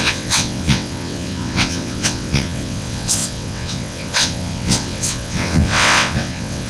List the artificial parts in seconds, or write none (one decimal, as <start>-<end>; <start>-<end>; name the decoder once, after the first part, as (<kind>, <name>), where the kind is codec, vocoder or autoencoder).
0.0-6.7 (vocoder, WaveNeXt)

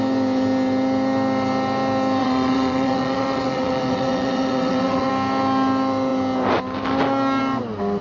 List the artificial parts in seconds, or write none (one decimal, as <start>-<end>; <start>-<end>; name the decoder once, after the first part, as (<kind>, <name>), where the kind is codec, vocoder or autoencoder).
2.2-5.1 (vocoder, WaveNeXt)

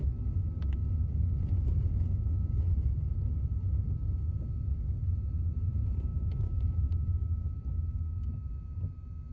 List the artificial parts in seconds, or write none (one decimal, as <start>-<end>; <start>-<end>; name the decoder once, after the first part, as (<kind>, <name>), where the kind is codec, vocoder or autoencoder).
6.1-8.5 (autoencoder, DAC-VAE)

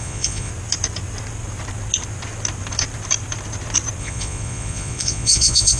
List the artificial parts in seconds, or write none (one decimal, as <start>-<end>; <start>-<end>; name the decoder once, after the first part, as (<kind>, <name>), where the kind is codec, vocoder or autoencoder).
0.0-0.5 (vocoder, Vocos); 4.0-5.8

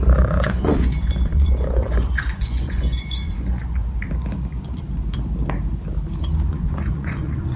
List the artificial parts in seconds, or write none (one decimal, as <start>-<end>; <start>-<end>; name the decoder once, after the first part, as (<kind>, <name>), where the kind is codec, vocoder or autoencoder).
0.0-3.8 (vocoder, Vocos); 6.5-7.6